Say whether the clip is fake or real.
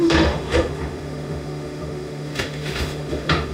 fake